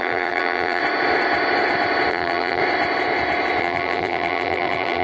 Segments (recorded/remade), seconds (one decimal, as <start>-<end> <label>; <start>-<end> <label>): 0.0-0.8 remade; 0.8-2.1 recorded; 2.1-2.6 remade; 2.6-3.6 recorded; 3.6-5.0 remade